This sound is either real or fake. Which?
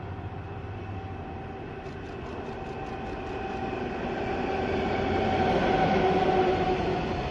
real